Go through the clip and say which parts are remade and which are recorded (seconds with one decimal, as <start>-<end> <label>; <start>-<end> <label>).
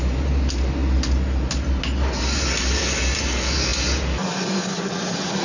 0.0-3.7 recorded; 3.7-5.4 remade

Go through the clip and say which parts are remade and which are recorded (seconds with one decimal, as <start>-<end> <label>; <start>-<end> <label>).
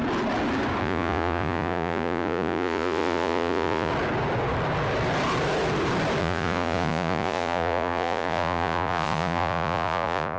0.0-0.8 recorded; 0.8-3.9 remade; 3.9-6.2 recorded; 6.2-10.4 remade